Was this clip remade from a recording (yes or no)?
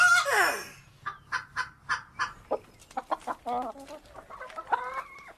no